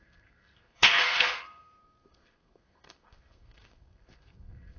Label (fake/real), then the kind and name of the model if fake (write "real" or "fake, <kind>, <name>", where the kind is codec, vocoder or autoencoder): fake, codec, SNAC